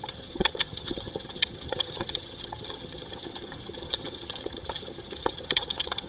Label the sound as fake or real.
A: fake